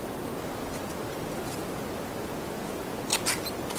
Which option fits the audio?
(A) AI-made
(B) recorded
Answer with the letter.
B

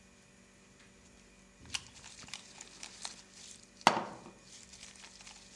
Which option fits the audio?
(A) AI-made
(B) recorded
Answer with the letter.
B